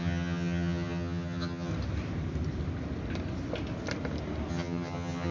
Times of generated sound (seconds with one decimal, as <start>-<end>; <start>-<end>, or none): 0.0-1.7; 4.5-5.3